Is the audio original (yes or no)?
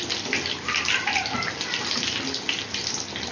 yes